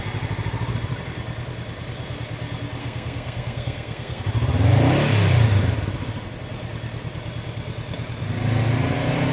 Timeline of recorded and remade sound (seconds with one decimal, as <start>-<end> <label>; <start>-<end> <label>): 0.0-2.8 recorded; 2.8-4.2 remade; 4.2-9.3 recorded